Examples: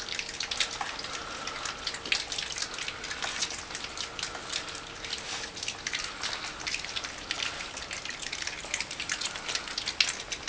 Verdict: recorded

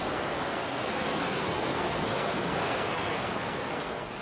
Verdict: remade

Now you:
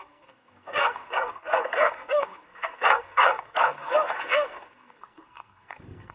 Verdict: remade